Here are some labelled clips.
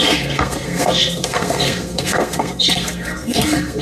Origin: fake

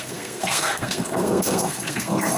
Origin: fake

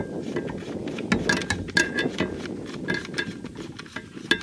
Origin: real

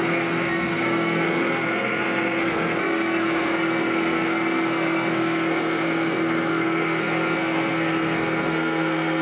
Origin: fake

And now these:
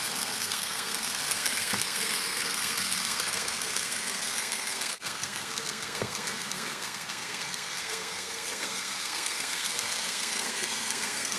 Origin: fake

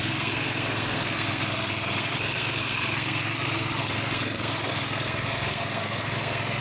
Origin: fake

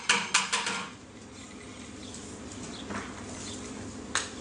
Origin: real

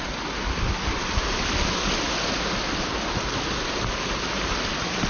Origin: real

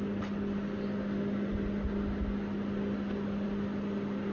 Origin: real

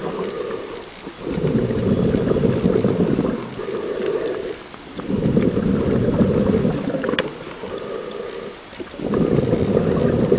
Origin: real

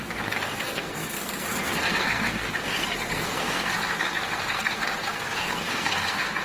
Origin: fake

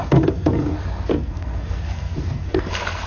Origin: fake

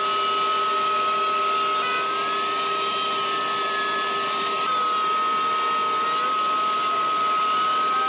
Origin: real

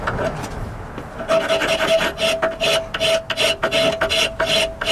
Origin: real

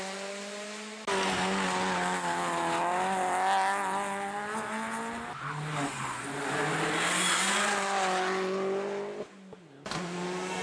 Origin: real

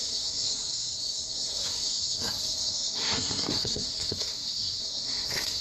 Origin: fake